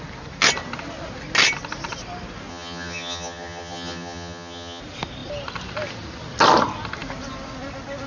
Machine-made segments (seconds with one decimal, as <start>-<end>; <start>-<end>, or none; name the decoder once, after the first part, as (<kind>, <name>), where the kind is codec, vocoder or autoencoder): 2.5-4.8 (vocoder, HiFi-GAN)